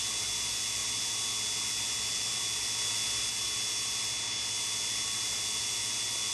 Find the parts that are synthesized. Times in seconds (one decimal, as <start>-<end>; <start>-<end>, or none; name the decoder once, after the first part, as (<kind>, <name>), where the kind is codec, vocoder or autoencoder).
none